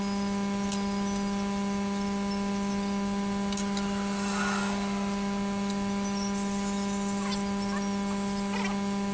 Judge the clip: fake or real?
real